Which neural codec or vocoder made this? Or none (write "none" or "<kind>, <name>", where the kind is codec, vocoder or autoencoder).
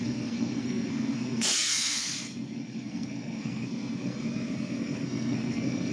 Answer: codec, SNAC